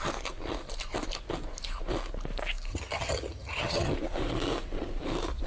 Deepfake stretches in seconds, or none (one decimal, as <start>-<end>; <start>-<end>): 2.7-3.9